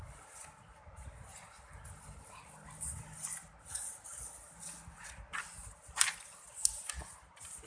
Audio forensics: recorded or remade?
recorded